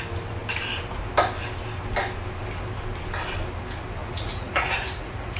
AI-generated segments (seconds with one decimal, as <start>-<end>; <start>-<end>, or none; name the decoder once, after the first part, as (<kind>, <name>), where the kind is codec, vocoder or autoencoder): 4.0-5.4 (vocoder, Vocos)